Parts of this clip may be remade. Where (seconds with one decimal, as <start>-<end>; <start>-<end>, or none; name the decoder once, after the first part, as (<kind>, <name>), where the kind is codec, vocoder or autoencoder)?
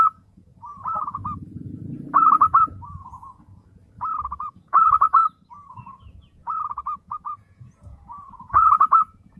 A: 0.0-1.2 (vocoder, Vocos); 2.3-3.8; 4.4-5.2; 5.7-9.4